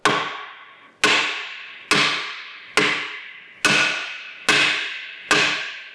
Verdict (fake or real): real